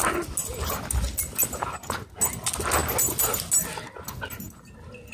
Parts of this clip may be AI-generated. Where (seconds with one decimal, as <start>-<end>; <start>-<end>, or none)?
none